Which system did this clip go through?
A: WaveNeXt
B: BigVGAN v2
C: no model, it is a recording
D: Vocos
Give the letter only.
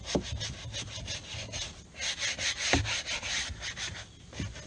C